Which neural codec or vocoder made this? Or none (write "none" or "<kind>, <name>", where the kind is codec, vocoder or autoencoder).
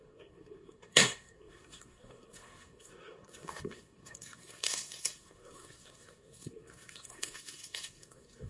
codec, SNAC